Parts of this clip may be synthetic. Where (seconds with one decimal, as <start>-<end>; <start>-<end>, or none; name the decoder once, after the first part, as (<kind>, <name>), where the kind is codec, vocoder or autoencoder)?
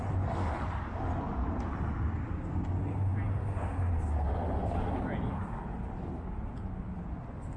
4.6-5.8 (vocoder, BigVGAN v2)